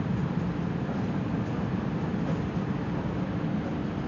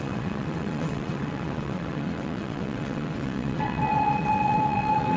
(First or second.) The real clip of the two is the first